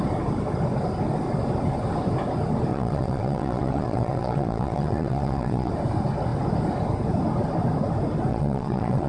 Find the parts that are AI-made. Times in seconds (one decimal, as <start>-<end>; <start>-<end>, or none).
2.7-5.7; 8.3-9.1